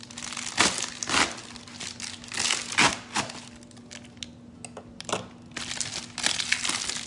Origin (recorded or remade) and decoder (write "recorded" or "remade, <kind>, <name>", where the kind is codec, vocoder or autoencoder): recorded